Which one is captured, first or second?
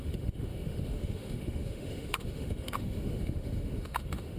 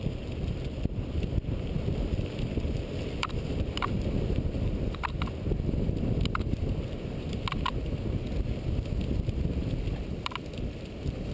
second